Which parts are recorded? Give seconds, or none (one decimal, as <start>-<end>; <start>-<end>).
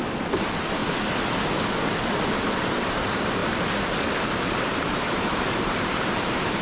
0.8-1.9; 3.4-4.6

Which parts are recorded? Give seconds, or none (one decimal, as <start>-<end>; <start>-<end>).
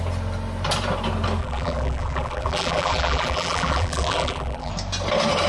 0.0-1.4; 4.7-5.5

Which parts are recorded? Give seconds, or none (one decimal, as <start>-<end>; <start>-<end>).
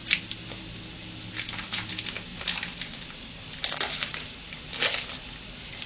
0.0-2.3; 4.5-5.9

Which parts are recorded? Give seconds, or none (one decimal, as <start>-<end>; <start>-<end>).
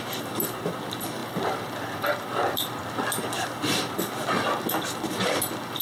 0.0-1.2; 2.2-5.8